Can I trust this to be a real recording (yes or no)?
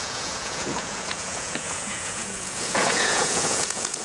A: no